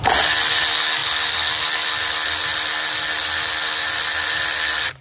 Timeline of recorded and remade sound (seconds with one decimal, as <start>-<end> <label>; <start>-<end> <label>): 0.0-5.0 recorded